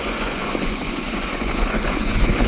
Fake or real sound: fake